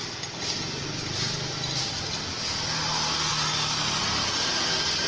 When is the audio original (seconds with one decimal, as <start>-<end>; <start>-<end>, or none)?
0.0-5.1